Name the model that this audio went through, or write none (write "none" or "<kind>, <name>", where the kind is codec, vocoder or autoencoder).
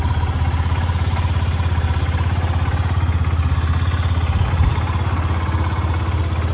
none